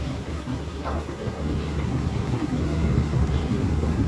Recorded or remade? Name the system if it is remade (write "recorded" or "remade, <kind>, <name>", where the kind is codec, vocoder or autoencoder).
remade, codec, SNAC